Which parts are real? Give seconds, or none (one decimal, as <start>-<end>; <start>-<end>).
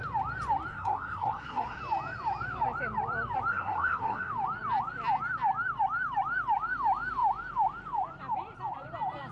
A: 0.0-0.7; 1.8-3.5; 4.3-9.3